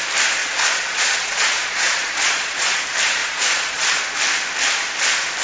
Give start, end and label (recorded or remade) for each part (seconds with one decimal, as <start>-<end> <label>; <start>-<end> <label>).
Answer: 0.0-0.4 recorded; 0.4-2.8 remade; 2.8-3.2 recorded; 3.2-4.0 remade; 4.0-5.4 recorded